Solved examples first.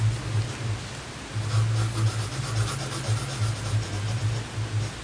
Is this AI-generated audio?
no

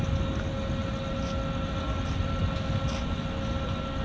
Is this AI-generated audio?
no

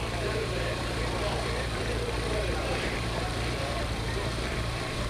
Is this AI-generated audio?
yes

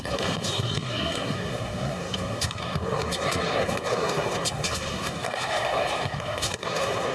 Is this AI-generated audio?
yes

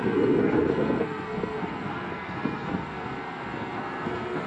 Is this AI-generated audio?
yes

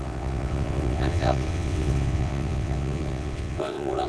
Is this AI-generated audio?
yes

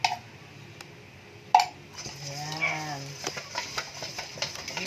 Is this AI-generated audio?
no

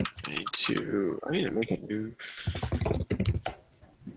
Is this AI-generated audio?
no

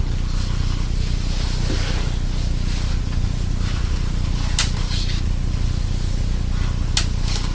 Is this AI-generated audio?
no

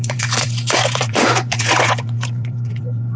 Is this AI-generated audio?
yes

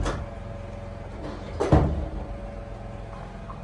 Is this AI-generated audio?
no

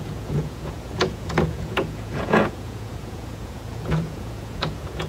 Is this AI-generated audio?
yes